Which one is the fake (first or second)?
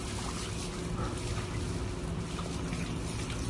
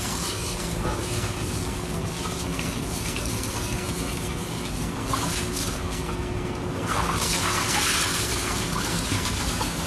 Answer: second